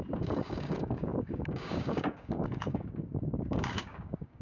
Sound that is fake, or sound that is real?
fake